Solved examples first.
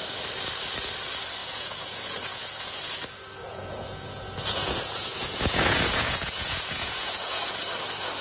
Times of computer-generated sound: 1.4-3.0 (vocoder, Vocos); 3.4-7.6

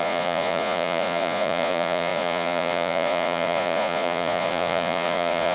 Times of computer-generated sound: 0.0-5.5 (vocoder, Vocos)

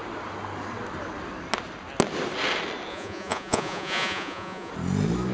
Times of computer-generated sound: 2.9-4.7 (vocoder, Vocos)

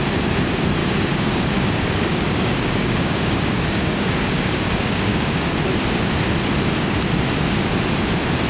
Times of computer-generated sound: 0.8-5.5 (codec, DAC)